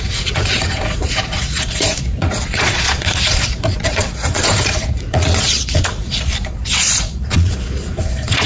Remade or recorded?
remade